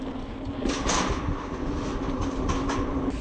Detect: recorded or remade recorded